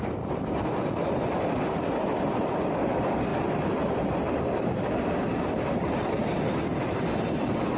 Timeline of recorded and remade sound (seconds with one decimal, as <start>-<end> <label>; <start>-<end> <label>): 0.0-7.8 recorded

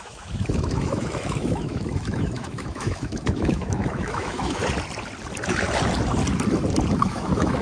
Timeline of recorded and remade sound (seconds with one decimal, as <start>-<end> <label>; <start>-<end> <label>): 0.0-4.6 remade; 4.6-6.9 recorded; 6.9-7.6 remade